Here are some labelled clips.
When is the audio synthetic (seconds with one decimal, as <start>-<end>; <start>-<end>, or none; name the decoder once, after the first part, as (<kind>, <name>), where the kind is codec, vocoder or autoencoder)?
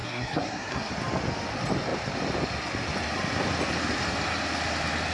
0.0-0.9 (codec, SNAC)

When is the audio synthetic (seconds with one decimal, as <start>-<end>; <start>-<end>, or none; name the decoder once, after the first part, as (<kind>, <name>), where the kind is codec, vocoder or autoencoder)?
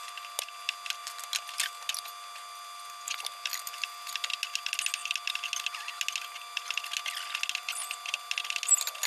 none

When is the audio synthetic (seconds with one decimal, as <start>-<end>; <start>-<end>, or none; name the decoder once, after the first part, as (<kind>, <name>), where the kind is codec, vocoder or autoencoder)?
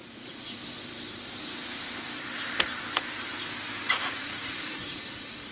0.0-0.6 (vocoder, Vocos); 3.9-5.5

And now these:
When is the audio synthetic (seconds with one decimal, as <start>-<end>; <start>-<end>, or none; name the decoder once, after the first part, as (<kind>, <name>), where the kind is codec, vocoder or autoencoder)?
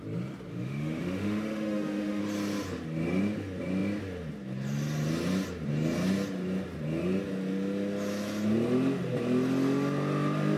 0.5-2.2 (autoencoder, DAC-VAE)